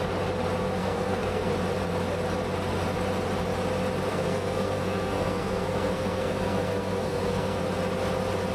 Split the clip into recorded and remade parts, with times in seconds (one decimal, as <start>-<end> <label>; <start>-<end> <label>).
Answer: 0.0-0.8 recorded; 0.8-1.5 remade; 1.5-4.1 recorded; 4.1-7.6 remade; 7.6-8.5 recorded